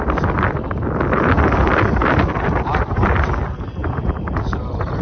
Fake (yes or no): no